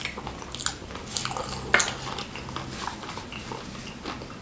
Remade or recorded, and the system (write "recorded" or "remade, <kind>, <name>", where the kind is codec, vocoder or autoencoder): recorded